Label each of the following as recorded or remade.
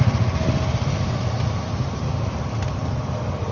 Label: recorded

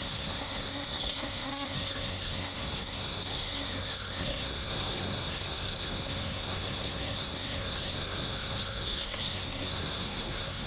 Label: remade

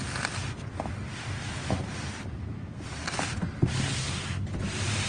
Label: recorded